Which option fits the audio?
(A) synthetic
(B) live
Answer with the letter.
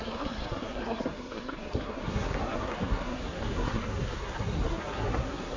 A